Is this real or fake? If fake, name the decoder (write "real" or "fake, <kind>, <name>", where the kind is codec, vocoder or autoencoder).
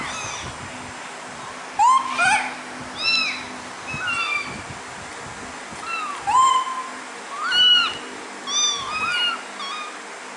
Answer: real